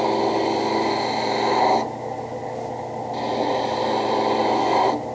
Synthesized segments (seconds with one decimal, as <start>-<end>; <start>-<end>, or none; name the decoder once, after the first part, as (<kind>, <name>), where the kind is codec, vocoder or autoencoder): none